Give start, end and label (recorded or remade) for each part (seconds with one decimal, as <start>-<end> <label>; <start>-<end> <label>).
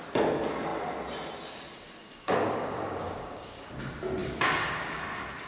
0.0-2.0 recorded; 2.0-3.7 remade; 3.7-4.2 recorded; 4.2-5.0 remade; 5.0-5.5 recorded